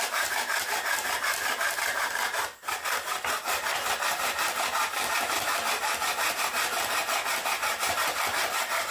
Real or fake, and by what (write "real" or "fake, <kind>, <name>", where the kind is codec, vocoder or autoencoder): fake, vocoder, BigVGAN v2